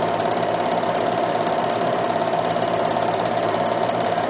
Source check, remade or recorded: remade